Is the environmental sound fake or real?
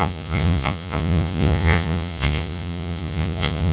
fake